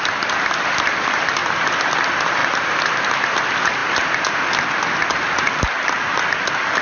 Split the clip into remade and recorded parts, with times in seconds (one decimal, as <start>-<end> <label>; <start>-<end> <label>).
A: 0.0-6.8 recorded